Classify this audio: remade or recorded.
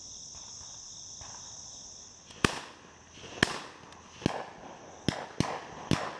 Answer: recorded